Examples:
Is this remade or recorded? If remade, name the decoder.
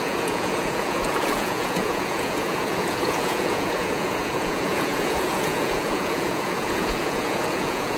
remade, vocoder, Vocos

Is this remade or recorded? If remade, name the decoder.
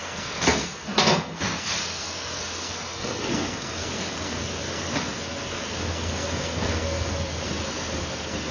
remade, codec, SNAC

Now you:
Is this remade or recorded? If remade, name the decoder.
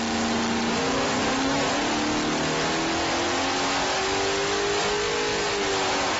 recorded